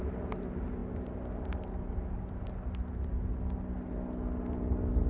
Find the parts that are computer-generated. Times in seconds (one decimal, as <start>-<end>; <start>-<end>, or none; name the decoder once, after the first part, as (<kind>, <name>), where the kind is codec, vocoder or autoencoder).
none